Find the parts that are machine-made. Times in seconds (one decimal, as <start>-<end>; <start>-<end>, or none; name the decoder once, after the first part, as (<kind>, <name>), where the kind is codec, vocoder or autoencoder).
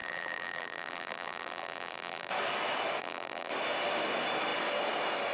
0.0-2.3 (vocoder, BigVGAN v2); 3.0-3.5